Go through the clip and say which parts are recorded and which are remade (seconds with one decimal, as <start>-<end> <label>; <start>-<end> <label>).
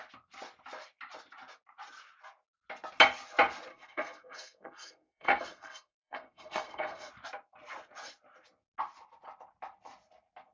0.0-3.7 recorded; 3.7-7.1 remade; 7.1-10.5 recorded